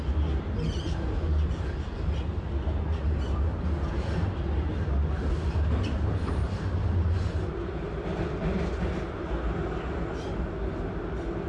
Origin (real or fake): real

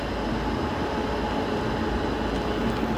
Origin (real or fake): real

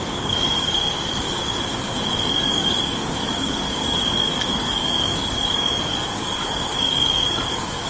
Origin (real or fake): fake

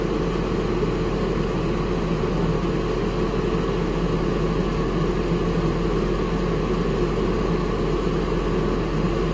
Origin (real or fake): real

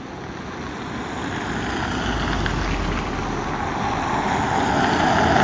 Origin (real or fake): real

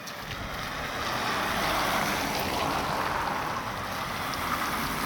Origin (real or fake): real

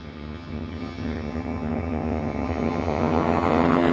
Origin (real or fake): fake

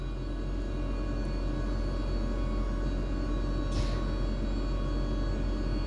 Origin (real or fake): real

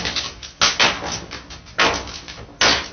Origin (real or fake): real